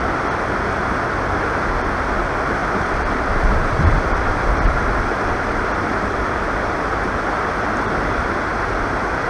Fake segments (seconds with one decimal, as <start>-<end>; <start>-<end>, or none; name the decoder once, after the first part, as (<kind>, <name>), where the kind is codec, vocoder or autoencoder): 2.6-6.8 (vocoder, BigVGAN v2); 8.5-9.3